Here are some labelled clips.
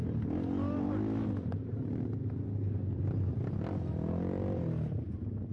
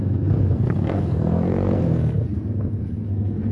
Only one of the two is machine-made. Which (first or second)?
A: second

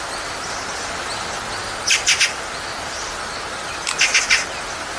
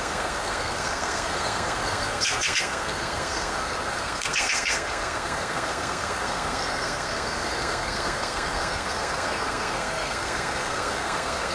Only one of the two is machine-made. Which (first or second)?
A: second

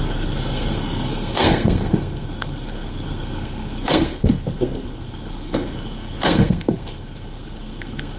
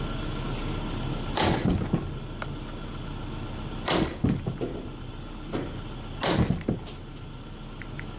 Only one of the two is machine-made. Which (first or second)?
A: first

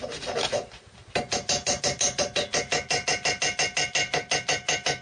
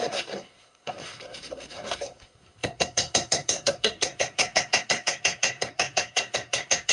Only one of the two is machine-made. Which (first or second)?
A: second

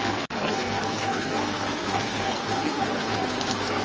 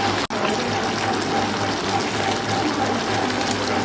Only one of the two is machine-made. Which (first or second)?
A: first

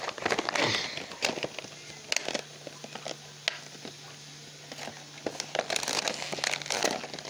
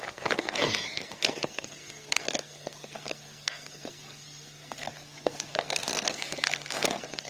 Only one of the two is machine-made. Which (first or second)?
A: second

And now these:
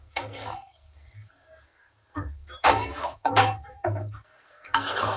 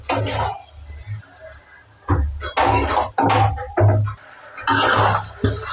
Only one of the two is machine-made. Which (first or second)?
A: first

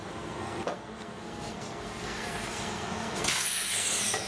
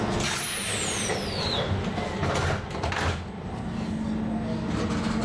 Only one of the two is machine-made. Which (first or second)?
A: first